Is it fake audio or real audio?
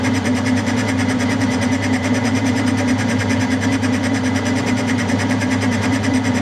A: fake